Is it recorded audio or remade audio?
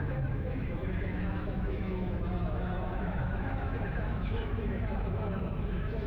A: remade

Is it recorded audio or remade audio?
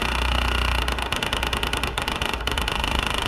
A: remade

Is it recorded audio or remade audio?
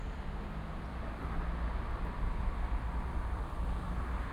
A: recorded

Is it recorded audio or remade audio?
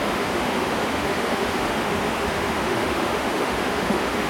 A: remade